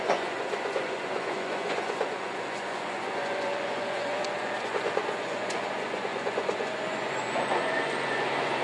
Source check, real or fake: fake